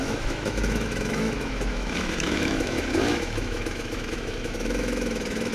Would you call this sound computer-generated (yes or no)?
yes